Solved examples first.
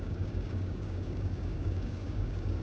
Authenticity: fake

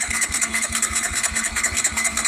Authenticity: fake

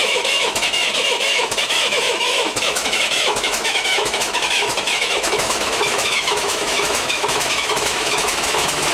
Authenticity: fake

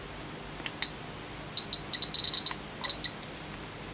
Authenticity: real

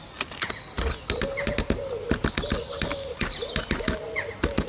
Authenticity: real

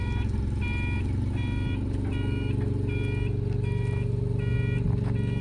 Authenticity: real